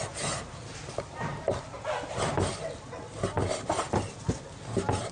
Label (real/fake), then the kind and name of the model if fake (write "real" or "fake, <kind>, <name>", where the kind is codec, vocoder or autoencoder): real